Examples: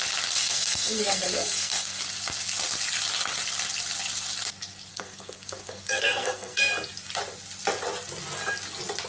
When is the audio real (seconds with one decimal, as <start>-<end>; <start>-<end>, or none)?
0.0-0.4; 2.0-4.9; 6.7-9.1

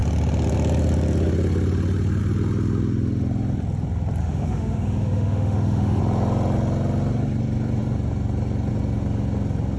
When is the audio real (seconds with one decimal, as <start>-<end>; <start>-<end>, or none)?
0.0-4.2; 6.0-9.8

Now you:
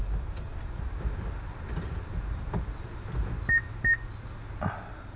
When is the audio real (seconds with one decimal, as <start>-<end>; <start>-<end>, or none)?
0.0-5.2

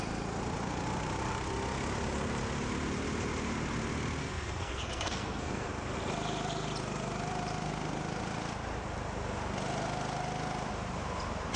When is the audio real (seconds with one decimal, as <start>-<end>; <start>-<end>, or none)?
0.0-4.2; 5.7-11.6

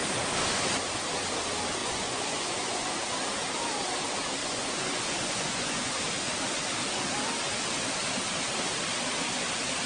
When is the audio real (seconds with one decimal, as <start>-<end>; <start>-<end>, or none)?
0.0-1.8; 2.9-4.4; 5.9-9.9